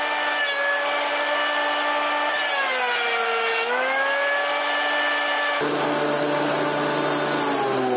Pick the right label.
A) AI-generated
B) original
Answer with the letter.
B